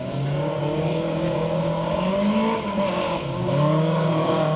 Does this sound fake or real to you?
fake